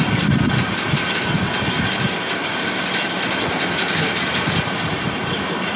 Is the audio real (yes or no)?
yes